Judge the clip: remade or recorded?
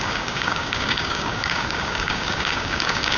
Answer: remade